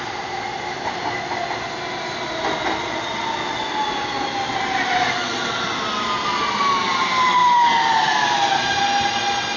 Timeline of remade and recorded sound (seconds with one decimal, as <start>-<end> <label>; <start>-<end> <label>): 0.0-9.6 recorded